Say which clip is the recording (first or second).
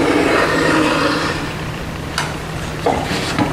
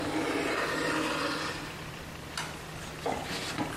second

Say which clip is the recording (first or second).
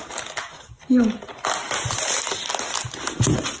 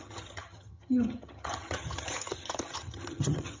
first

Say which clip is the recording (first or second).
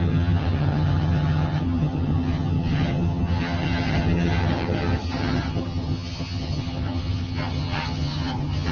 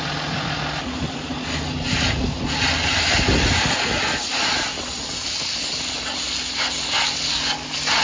second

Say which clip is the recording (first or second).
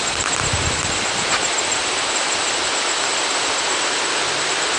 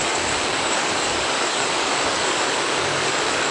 first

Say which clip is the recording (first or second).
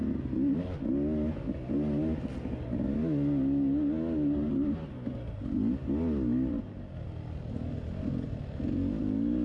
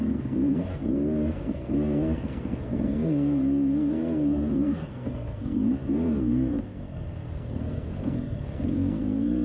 first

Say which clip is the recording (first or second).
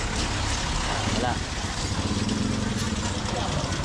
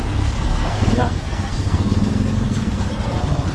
first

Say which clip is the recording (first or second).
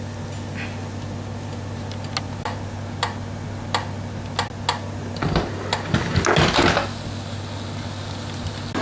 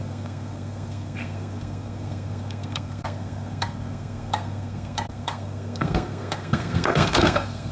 first